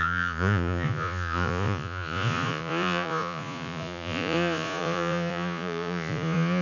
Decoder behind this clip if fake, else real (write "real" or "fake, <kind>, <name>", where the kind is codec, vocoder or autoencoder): fake, vocoder, Vocos